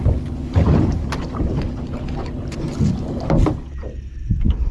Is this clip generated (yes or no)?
no